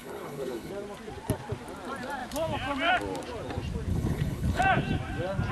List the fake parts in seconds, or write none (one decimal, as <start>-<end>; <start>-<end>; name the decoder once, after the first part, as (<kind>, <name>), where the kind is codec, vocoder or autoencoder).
0.0-0.7 (codec, HILCodec); 3.9-4.6